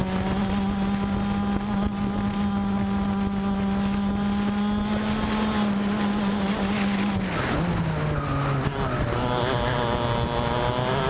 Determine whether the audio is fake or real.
real